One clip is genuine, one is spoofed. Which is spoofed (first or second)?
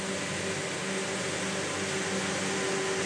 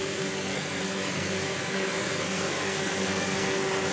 second